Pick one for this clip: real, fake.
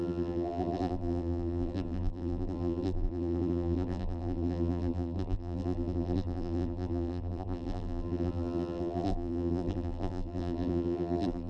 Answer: fake